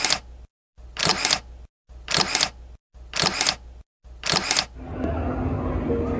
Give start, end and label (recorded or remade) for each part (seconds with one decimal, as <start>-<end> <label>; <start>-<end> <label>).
0.0-6.2 recorded